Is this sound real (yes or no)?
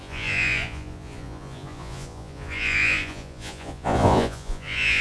no